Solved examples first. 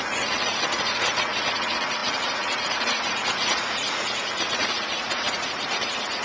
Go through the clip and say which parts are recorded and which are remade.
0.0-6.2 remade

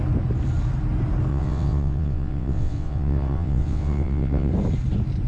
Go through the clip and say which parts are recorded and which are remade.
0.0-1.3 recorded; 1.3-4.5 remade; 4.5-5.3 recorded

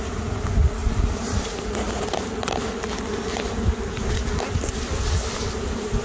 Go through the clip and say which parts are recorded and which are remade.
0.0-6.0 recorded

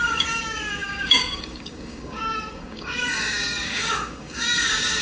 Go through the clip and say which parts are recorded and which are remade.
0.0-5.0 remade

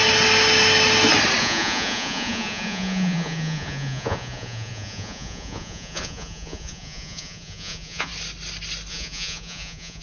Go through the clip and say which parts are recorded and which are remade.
0.0-1.4 recorded; 1.4-8.1 remade; 8.1-8.9 recorded; 8.9-10.0 remade